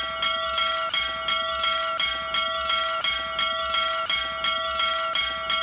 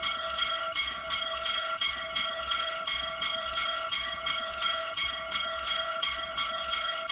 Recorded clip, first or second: first